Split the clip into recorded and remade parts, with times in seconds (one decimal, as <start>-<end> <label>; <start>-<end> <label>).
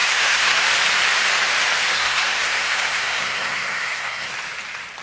0.0-0.7 remade; 0.7-1.9 recorded; 1.9-4.3 remade; 4.3-5.0 recorded